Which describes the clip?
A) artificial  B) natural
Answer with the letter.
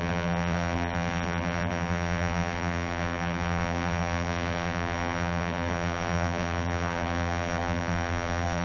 A